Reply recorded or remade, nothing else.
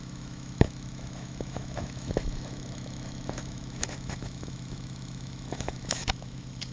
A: remade